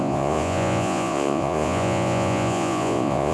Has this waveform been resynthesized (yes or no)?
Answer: yes